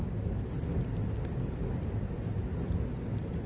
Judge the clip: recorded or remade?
recorded